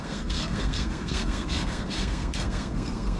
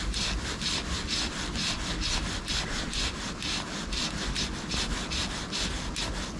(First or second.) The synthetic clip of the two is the first